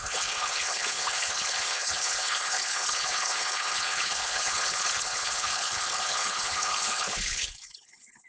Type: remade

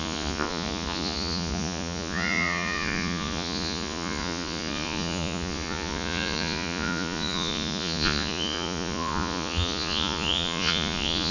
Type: remade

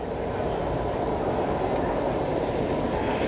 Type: recorded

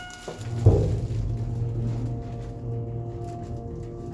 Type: recorded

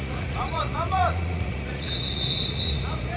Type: remade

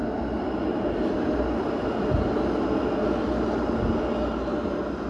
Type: recorded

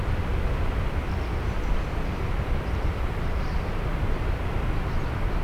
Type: remade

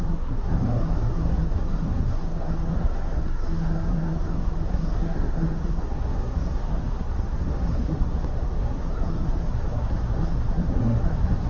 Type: remade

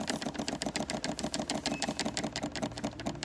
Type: recorded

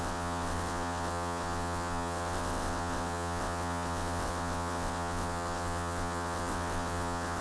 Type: remade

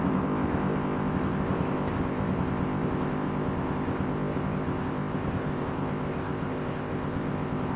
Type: remade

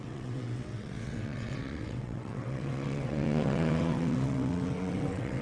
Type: remade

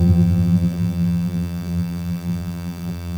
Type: remade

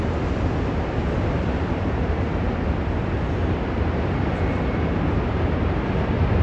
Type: recorded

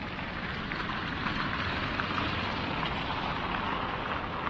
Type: remade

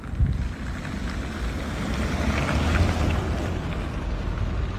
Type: recorded